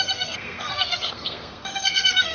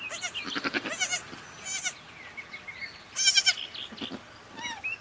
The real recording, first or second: second